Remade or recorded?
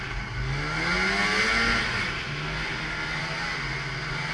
recorded